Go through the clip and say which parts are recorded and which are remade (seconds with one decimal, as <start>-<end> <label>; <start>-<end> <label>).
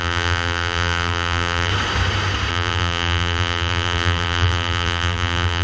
0.0-1.7 remade; 1.7-2.5 recorded; 2.5-5.6 remade